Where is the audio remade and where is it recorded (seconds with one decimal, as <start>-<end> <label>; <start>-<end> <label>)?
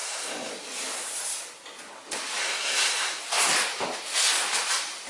0.0-0.5 remade; 0.5-2.4 recorded; 2.4-3.2 remade; 3.2-5.1 recorded